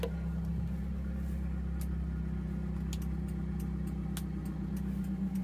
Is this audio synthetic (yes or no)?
no